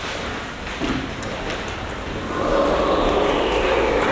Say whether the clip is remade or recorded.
recorded